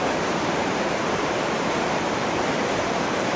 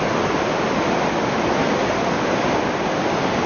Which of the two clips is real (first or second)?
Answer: second